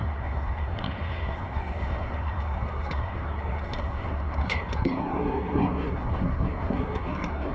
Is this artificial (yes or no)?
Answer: yes